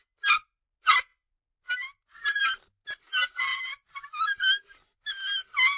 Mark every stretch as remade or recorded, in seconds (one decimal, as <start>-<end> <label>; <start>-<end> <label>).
0.0-5.8 recorded